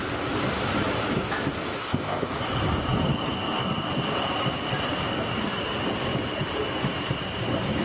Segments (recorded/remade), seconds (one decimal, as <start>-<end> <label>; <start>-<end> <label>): 0.0-1.8 recorded; 1.8-2.3 remade; 2.3-7.8 recorded